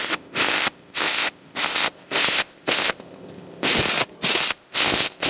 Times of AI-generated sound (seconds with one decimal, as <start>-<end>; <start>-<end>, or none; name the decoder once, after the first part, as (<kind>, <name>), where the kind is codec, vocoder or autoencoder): 0.0-3.7 (codec, ZipCodec); 4.5-5.3